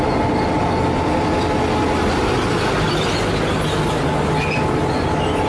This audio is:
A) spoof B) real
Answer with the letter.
B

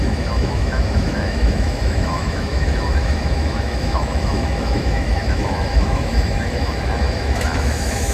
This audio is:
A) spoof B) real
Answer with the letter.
A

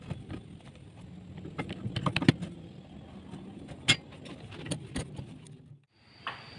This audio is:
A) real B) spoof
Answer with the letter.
A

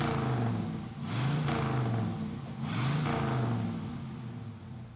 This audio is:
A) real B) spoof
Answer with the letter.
A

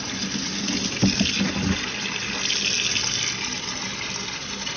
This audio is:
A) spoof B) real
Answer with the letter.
B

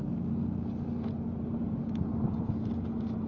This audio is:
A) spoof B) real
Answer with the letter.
B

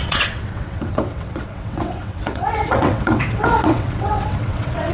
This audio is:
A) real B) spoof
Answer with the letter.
B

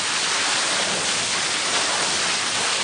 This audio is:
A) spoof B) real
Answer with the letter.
A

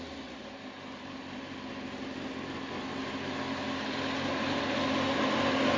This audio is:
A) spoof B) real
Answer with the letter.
B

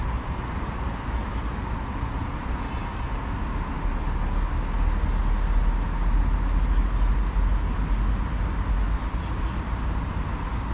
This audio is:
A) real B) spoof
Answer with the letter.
A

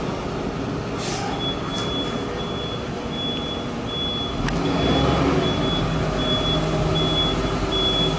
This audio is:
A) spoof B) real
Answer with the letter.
B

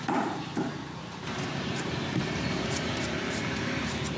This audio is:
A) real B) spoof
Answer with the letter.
B